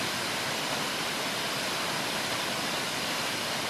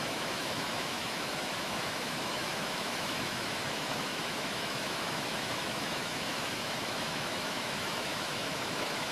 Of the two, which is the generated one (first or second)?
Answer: second